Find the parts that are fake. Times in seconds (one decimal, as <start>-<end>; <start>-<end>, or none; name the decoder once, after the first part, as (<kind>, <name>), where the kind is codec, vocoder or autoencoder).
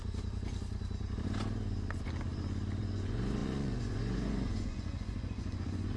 2.8-6.0 (vocoder, Vocos)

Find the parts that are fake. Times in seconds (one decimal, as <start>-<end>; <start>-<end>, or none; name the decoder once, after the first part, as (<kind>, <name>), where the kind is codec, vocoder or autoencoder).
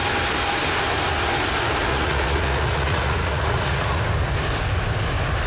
1.9-4.0 (vocoder, Vocos)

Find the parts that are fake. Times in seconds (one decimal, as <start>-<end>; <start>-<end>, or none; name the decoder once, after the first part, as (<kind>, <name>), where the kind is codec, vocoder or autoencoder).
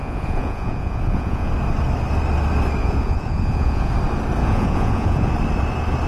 0.0-1.5 (vocoder, Vocos); 2.8-3.9; 4.4-5.3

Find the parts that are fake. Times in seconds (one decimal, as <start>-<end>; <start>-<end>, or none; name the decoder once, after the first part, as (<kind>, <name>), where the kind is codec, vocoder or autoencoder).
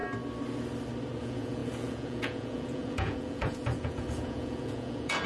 1.2-5.3 (vocoder, Vocos)